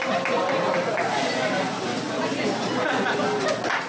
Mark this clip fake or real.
real